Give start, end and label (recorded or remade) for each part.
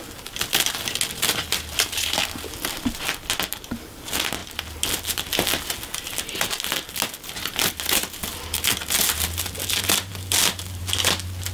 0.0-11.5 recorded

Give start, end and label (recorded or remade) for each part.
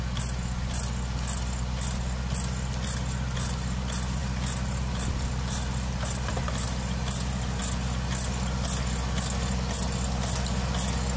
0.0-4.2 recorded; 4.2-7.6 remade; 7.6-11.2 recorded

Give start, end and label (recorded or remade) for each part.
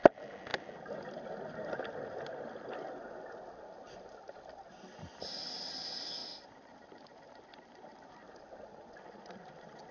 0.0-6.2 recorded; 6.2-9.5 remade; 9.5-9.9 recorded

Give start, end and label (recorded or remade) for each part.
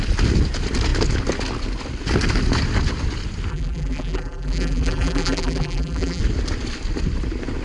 0.0-3.5 recorded; 3.5-6.2 remade; 6.2-7.6 recorded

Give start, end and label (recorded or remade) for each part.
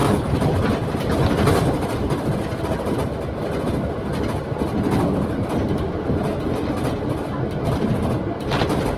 0.0-2.4 remade; 2.4-3.4 recorded; 3.4-6.3 remade; 6.3-9.0 recorded